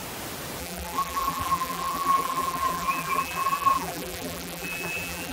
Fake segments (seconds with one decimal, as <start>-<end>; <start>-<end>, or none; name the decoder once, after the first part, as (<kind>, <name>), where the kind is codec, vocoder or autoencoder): 0.6-5.3 (vocoder, BigVGAN v2)